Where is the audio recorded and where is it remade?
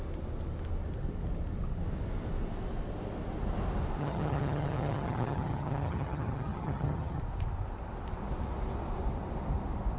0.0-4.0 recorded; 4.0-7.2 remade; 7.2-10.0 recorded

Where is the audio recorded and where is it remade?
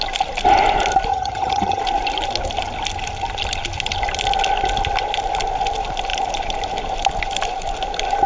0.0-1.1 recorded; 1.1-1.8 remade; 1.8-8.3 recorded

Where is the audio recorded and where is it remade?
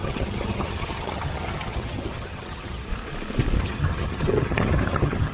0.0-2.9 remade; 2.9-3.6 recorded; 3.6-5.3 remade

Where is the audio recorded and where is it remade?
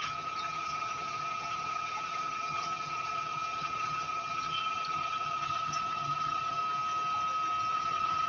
0.0-6.6 remade; 6.6-7.7 recorded; 7.7-8.3 remade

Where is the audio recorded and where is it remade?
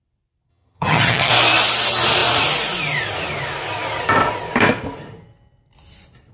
0.0-0.5 recorded; 0.5-1.3 remade; 1.3-6.3 recorded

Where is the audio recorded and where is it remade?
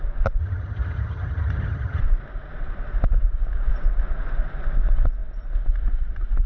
0.0-0.4 recorded; 0.4-2.0 remade; 2.0-6.5 recorded